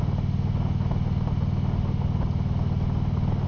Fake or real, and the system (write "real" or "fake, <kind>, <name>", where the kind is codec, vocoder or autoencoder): real